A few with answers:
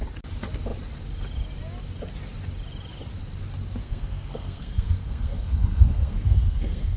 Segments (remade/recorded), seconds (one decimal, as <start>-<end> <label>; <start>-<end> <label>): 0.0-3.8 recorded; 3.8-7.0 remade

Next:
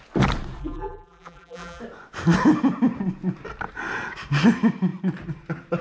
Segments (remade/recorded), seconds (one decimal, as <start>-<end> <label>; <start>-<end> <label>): 0.0-0.6 recorded; 0.6-1.8 remade; 1.8-5.8 recorded

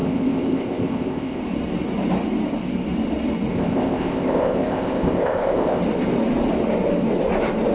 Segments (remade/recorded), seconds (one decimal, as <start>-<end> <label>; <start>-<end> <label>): 0.0-1.4 remade; 1.4-3.5 recorded; 3.5-5.8 remade; 5.8-7.7 recorded

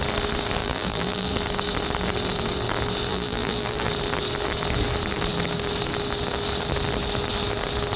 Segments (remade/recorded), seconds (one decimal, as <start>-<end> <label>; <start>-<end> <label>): 0.0-0.6 recorded; 0.6-1.3 remade; 1.3-3.1 recorded; 3.1-3.9 remade; 3.9-8.0 recorded

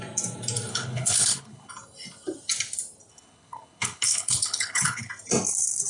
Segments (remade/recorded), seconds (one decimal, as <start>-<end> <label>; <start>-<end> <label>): 0.0-0.7 recorded; 0.7-1.7 remade; 1.7-3.1 recorded; 3.1-5.1 remade; 5.1-5.9 recorded

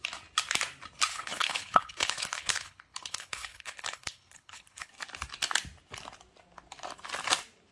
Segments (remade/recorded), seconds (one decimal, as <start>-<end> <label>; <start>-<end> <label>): 0.0-1.1 recorded; 1.1-4.9 remade; 4.9-7.7 recorded

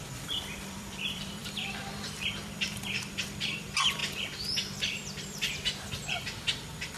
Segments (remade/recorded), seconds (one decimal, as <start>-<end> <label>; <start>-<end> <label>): 0.0-4.0 remade; 4.0-6.4 recorded; 6.4-7.0 remade